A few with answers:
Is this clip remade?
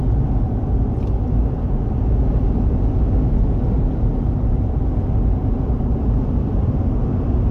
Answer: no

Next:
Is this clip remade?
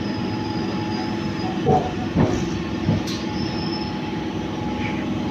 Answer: yes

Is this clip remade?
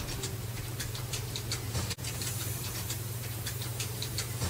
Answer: yes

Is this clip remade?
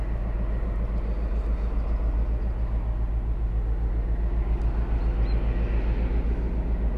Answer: no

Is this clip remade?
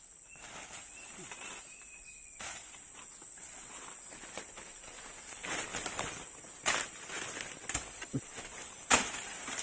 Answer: no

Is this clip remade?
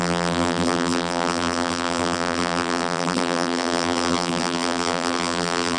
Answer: yes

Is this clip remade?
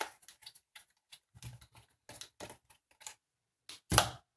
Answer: no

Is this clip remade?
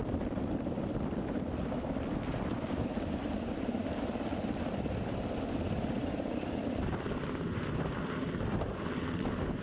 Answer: yes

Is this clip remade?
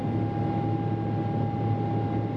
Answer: no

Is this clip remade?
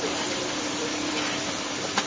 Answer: yes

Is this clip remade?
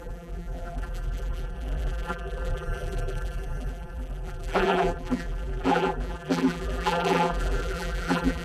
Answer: yes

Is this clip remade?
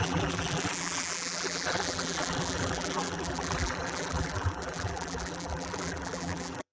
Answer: yes